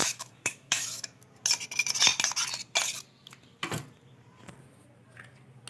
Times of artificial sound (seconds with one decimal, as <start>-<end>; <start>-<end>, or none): 0.0-1.2